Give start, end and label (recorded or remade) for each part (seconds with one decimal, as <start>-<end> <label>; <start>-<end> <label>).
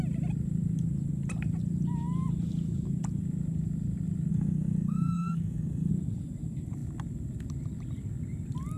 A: 0.0-4.3 recorded; 4.3-5.9 remade; 5.9-8.8 recorded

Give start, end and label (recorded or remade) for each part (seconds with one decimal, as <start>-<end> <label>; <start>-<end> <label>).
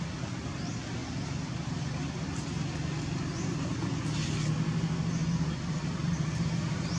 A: 0.0-7.0 recorded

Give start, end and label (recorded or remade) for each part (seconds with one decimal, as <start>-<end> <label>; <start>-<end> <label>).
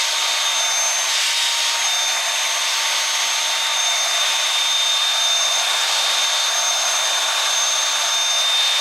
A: 0.0-3.7 recorded; 3.7-8.1 remade; 8.1-8.8 recorded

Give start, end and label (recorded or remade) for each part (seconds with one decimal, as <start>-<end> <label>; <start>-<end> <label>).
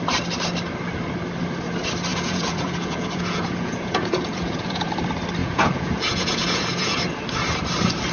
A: 0.0-2.1 recorded; 2.1-4.9 remade; 4.9-5.4 recorded; 5.4-7.0 remade; 7.0-8.1 recorded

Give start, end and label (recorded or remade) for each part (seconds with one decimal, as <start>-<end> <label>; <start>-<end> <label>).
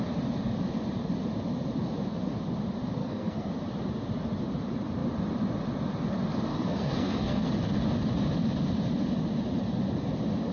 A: 0.0-3.0 recorded; 3.0-3.5 remade; 3.5-6.5 recorded; 6.5-7.5 remade; 7.5-10.5 recorded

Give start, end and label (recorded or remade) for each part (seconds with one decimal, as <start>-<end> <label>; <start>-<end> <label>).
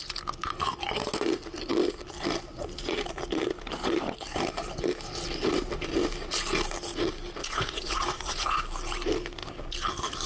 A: 0.0-7.4 recorded; 7.4-8.6 remade; 8.6-10.3 recorded